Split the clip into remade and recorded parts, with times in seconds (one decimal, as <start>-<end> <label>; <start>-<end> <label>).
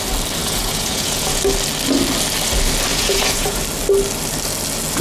0.0-0.4 recorded; 0.4-1.4 remade; 1.4-2.9 recorded; 2.9-3.6 remade; 3.6-5.0 recorded